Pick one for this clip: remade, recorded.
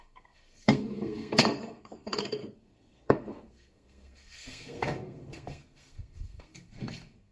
remade